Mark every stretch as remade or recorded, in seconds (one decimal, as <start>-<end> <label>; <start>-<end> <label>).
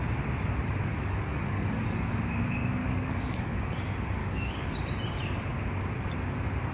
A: 0.0-0.9 recorded; 0.9-2.2 remade; 2.2-2.8 recorded; 2.8-3.6 remade; 3.6-4.2 recorded; 4.2-4.8 remade; 4.8-6.7 recorded